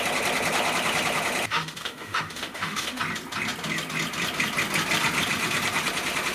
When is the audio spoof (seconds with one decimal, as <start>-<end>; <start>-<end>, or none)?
1.5-3.0